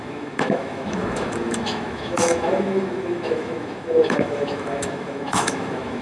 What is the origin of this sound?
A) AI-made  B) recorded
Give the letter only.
A